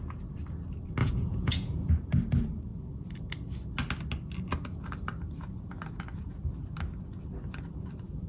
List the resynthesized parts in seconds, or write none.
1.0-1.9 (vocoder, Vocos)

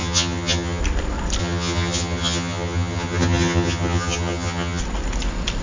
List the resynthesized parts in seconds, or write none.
0.0-0.8 (vocoder, HiFi-GAN); 1.4-4.8

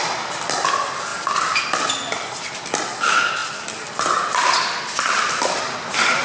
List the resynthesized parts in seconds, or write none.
1.1-1.9 (vocoder, BigVGAN v2)

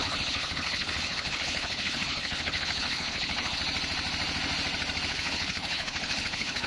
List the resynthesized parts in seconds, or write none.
0.0-3.6 (codec, HILCodec); 5.1-6.7

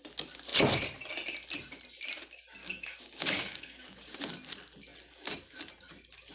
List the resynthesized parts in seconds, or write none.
2.6-4.2 (codec, DAC)